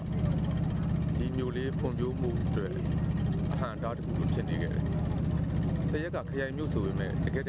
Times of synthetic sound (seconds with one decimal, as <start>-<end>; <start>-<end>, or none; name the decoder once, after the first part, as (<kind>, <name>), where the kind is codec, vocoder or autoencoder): none